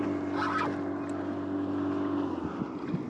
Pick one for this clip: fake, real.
real